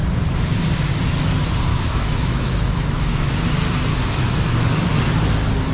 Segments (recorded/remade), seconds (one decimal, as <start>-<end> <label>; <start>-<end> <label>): 0.0-1.7 recorded; 1.7-3.3 remade; 3.3-3.9 recorded; 3.9-5.0 remade; 5.0-5.7 recorded